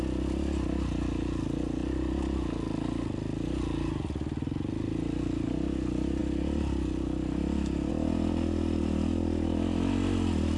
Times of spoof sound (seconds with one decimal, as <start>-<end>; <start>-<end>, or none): none